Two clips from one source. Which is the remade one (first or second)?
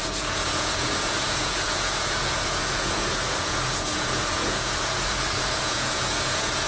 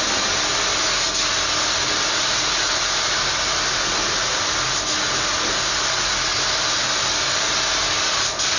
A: first